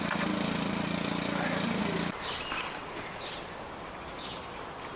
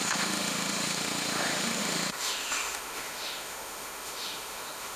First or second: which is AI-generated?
second